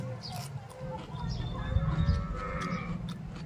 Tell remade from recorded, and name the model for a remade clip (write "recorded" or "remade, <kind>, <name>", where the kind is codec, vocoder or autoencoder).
recorded